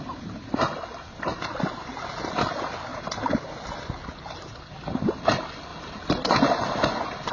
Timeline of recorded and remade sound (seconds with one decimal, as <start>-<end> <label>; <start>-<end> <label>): 0.0-7.3 recorded